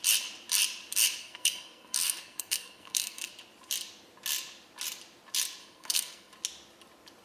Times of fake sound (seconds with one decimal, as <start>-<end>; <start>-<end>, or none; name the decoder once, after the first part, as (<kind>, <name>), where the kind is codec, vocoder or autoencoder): 1.2-3.3 (codec, SNAC); 5.6-6.3